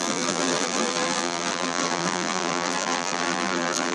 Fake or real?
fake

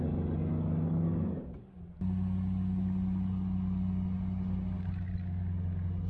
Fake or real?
real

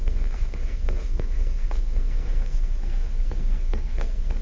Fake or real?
fake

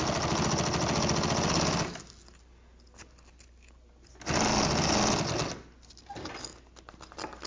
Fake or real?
real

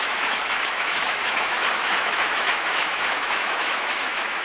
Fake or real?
fake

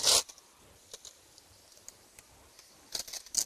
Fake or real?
real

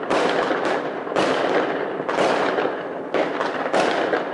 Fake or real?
real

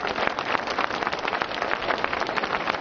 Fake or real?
real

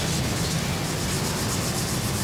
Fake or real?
real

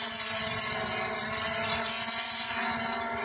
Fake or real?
real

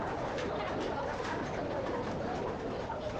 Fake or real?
real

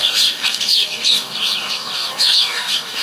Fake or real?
fake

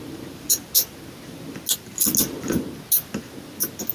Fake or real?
real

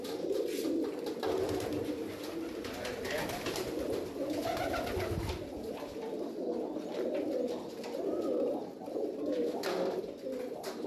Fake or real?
real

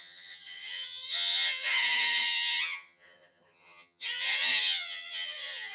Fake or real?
fake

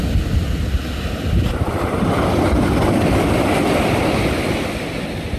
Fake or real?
real